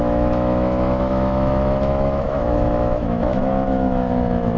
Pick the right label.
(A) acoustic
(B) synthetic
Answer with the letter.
B